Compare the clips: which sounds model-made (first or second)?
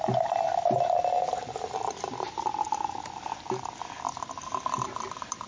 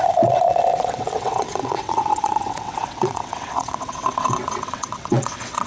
second